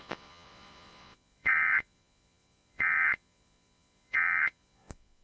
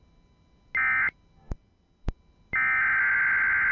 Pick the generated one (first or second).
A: first